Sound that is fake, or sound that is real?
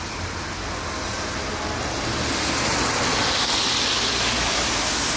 real